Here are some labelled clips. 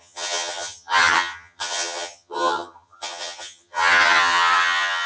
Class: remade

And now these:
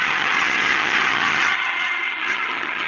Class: remade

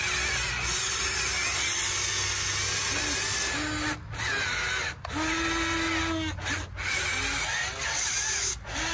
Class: recorded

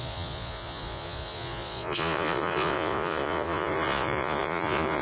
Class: remade